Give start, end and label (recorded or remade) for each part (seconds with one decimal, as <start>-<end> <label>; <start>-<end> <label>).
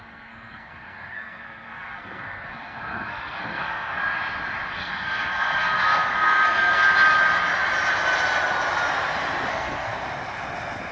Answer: 0.0-4.0 remade; 4.0-4.7 recorded; 4.7-6.8 remade; 6.8-9.5 recorded; 9.5-9.9 remade; 9.9-10.9 recorded